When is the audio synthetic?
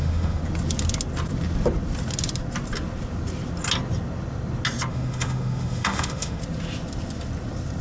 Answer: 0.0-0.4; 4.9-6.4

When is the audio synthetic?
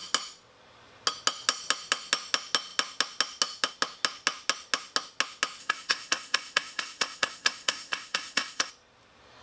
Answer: 5.6-8.7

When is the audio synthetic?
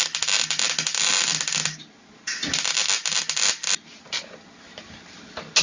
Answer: none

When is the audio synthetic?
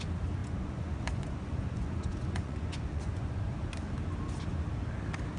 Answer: 0.4-3.4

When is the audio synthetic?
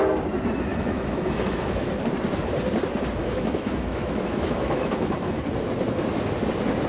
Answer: 0.7-1.9; 3.2-5.4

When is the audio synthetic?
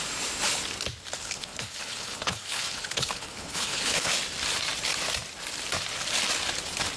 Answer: 1.2-4.1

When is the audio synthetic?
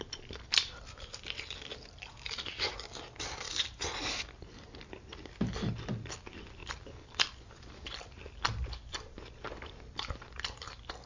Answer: none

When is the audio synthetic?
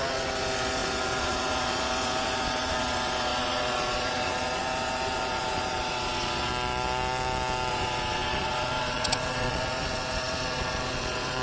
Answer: 0.0-6.5; 7.7-11.4